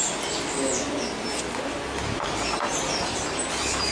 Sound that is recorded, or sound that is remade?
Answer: recorded